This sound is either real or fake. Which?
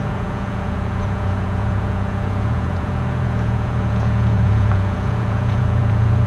fake